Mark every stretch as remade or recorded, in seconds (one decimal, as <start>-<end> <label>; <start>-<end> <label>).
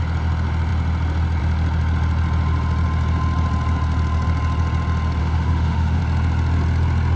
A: 0.0-5.2 recorded; 5.2-6.0 remade; 6.0-7.2 recorded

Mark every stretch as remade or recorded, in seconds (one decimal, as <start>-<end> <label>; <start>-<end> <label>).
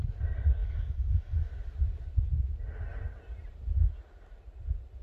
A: 0.0-0.6 recorded; 0.6-1.5 remade; 1.5-5.0 recorded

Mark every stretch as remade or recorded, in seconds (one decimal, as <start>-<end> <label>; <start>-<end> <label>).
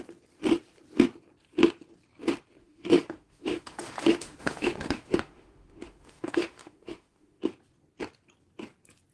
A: 0.0-2.6 recorded; 2.6-7.4 remade; 7.4-9.1 recorded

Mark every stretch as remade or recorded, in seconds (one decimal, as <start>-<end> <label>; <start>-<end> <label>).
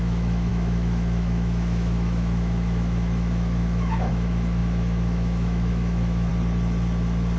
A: 0.0-6.3 remade; 6.3-7.4 recorded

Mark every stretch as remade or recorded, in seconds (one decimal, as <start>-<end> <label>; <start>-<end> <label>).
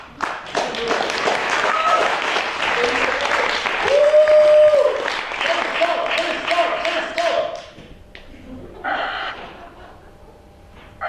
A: 0.0-1.4 recorded; 1.4-2.4 remade; 2.4-11.1 recorded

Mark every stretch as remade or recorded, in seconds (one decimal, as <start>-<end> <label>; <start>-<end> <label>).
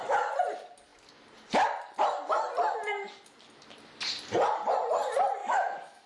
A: 0.0-5.4 recorded; 5.4-6.1 remade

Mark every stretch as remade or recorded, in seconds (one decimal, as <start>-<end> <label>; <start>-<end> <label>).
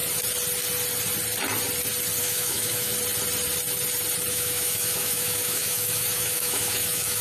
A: 0.0-2.2 recorded; 2.2-2.9 remade; 2.9-4.3 recorded; 4.3-7.2 remade